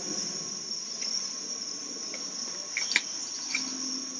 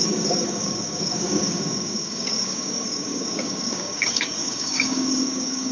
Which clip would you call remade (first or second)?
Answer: second